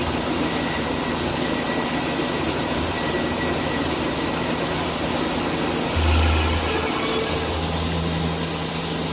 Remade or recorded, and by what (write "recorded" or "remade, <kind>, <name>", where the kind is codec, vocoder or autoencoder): recorded